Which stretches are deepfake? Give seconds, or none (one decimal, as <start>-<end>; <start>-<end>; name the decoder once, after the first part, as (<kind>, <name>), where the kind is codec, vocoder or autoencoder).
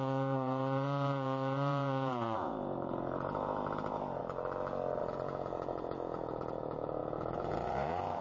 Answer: 0.0-4.2 (vocoder, Vocos); 5.0-8.2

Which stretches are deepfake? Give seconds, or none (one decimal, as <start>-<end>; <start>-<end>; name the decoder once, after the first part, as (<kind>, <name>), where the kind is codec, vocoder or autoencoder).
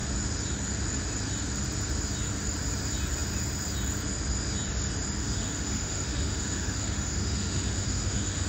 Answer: 5.2-8.5 (autoencoder, DAC-VAE)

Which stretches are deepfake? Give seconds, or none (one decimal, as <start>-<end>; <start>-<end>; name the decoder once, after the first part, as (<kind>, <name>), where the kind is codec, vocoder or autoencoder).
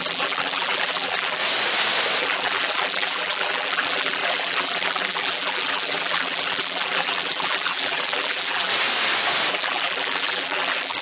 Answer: 0.0-1.4 (vocoder, BigVGAN v2); 2.2-8.7; 9.5-11.0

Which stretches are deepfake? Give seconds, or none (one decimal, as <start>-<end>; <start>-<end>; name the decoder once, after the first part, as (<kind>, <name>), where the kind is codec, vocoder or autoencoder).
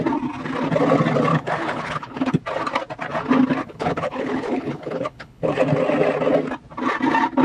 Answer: 1.3-2.4 (codec, HILCodec); 3.6-5.6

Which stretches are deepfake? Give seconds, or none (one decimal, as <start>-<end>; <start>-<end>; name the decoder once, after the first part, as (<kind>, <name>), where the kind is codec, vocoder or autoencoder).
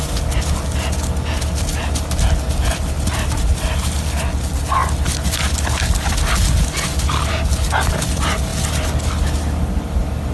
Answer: none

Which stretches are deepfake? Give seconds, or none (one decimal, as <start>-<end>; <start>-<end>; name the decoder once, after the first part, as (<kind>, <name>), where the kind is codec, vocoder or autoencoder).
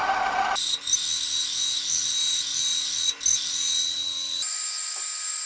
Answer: none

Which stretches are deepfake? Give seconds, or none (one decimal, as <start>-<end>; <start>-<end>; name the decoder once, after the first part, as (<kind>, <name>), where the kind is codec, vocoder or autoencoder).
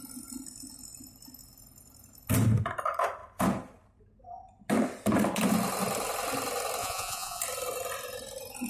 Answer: 6.8-7.4 (vocoder, Vocos)